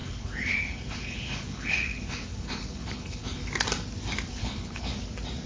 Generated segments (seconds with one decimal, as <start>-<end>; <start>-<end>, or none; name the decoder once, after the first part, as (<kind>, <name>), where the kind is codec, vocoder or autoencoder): 0.0-3.4 (codec, HILCodec); 4.3-4.9